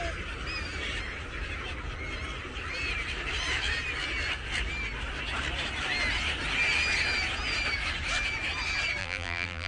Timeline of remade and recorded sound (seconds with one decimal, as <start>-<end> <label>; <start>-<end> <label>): 0.0-9.0 recorded; 9.0-9.7 remade